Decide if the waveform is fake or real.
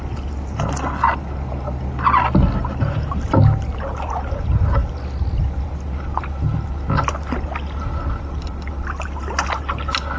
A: real